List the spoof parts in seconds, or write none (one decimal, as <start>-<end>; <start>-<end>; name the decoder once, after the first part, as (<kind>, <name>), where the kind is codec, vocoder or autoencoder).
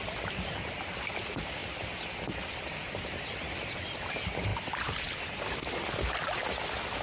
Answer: none